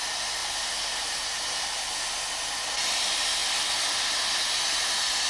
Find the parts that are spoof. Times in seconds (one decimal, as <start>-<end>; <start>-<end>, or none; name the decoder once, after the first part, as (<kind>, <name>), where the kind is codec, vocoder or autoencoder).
none